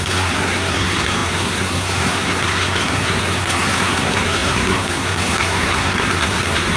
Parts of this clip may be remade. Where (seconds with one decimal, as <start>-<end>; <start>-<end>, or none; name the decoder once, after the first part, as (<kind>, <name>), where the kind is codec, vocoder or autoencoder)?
0.0-6.8 (codec, SNAC)